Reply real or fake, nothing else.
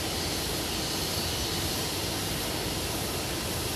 real